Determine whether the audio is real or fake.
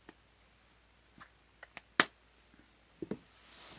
real